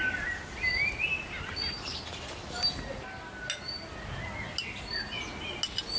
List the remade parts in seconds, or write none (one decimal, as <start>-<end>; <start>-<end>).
none